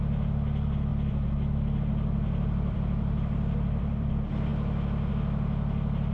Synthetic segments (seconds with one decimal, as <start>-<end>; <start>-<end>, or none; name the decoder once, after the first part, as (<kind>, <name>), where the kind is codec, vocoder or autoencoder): 0.9-4.1 (vocoder, BigVGAN v2)